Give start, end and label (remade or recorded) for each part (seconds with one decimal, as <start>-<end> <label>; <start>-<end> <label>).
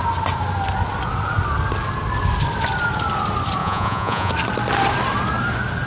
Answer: 0.0-3.6 recorded; 3.6-4.3 remade; 4.3-5.9 recorded